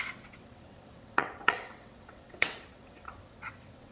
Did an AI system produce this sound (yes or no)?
yes